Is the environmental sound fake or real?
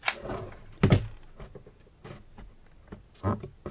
real